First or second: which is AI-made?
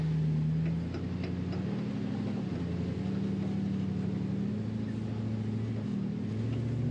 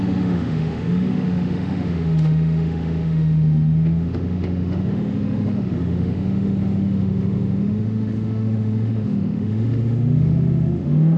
second